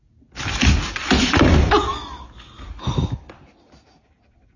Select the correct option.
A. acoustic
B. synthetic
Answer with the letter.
A